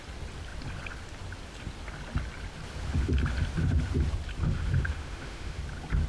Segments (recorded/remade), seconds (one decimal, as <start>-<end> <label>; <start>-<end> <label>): 0.0-4.4 recorded; 4.4-5.6 remade; 5.6-6.1 recorded